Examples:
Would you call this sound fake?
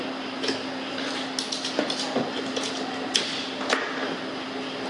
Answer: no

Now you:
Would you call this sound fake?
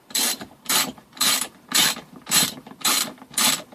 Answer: yes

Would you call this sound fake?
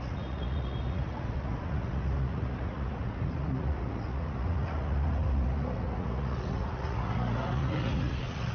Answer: yes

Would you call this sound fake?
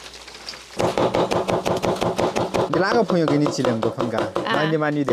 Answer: no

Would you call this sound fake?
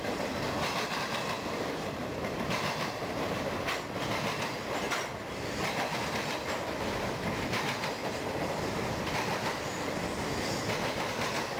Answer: no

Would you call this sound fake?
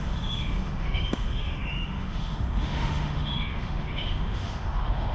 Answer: yes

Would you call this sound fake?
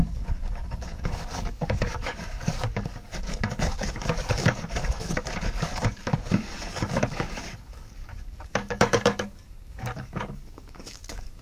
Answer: yes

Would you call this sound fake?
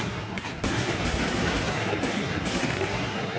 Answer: yes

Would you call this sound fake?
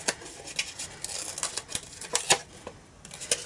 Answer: no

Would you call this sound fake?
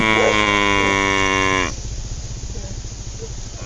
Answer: yes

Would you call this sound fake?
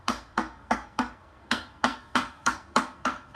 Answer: yes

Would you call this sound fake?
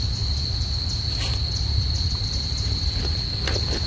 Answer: no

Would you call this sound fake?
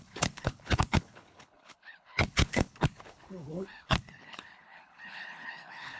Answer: yes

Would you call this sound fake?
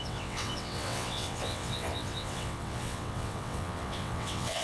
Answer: yes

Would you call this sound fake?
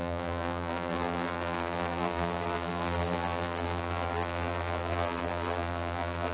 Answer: yes